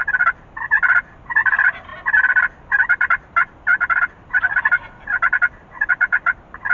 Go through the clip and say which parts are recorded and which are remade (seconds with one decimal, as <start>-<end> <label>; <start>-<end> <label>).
0.0-6.7 recorded